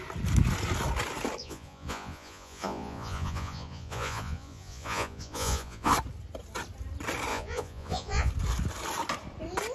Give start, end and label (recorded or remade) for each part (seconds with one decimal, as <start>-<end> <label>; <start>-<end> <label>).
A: 0.0-1.4 recorded; 1.4-5.9 remade; 5.9-7.3 recorded; 7.3-8.3 remade; 8.3-9.7 recorded